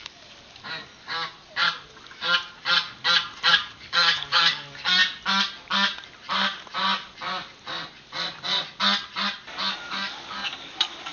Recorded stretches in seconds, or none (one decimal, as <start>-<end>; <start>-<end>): 0.9-3.5; 5.0-9.8